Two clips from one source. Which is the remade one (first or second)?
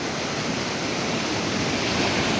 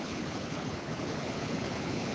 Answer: second